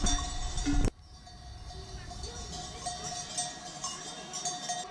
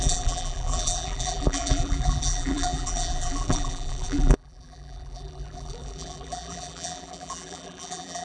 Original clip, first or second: first